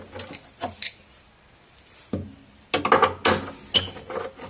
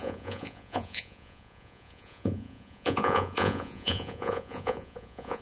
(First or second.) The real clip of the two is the first